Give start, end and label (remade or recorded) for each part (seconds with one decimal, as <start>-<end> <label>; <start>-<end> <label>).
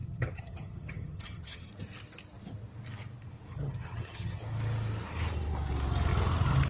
0.0-1.7 remade; 1.7-3.5 recorded; 3.5-4.4 remade; 4.4-6.7 recorded